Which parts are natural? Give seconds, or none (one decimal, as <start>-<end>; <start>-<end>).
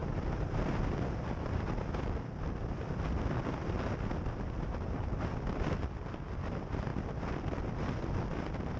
0.0-8.8